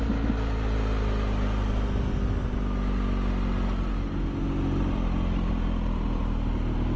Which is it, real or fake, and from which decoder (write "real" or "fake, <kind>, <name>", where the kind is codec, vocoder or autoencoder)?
real